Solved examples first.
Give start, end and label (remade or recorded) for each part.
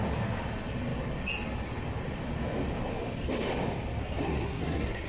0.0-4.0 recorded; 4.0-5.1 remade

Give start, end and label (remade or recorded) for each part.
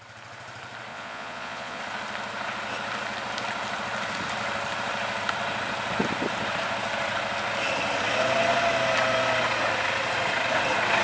0.0-0.9 recorded; 0.9-1.8 remade; 1.8-11.0 recorded